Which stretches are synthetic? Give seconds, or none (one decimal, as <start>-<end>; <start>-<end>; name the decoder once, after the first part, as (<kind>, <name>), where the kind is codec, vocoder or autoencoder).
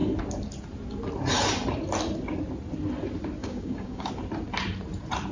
3.4-4.1 (codec, DAC)